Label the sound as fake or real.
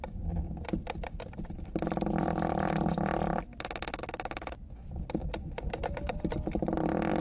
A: real